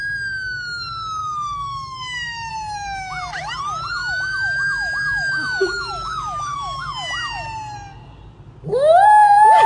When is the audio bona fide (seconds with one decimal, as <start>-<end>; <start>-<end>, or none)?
0.0-1.2; 2.5-4.0; 6.8-9.7